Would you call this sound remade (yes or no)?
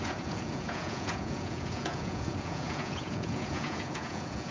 yes